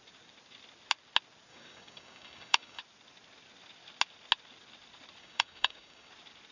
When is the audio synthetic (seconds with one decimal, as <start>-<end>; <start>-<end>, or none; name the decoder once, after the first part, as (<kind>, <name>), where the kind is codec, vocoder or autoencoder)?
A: 1.5-2.8 (codec, DAC); 5.2-6.1